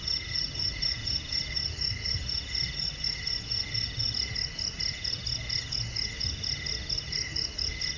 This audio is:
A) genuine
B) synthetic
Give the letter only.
A